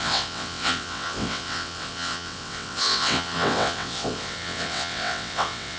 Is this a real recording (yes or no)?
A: no